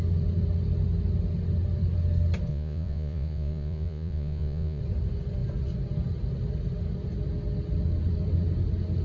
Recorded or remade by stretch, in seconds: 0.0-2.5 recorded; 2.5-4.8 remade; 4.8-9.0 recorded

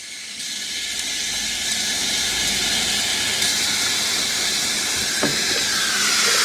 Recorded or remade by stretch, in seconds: 0.0-2.0 recorded; 2.0-2.7 remade; 2.7-6.4 recorded